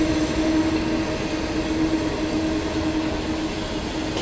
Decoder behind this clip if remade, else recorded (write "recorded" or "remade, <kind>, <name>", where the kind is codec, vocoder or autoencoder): recorded